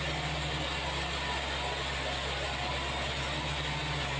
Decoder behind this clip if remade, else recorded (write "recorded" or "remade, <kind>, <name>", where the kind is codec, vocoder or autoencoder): recorded